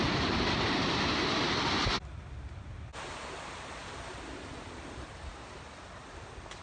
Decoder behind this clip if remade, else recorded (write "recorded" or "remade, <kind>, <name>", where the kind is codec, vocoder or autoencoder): recorded